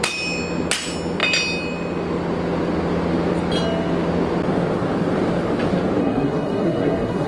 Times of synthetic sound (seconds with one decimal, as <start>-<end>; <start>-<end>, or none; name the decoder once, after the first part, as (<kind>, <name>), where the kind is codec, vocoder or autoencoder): 6.0-7.3 (codec, SNAC)